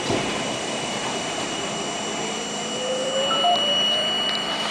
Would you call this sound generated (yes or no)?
yes